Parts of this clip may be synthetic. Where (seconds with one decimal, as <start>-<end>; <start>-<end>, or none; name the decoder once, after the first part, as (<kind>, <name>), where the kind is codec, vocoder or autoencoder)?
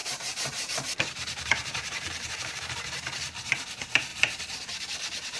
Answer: 0.0-3.2 (vocoder, BigVGAN v2); 4.1-4.6